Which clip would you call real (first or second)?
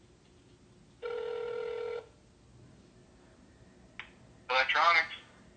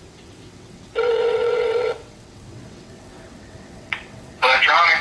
first